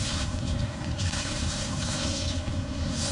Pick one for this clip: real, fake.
fake